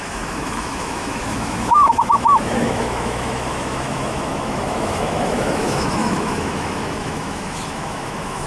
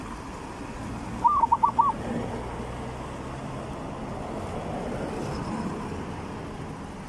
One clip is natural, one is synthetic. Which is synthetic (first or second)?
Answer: first